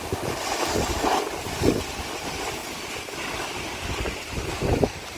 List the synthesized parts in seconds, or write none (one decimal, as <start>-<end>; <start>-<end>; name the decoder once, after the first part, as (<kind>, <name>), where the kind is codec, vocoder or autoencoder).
none